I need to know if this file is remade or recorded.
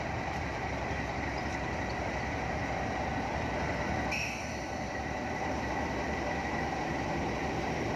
remade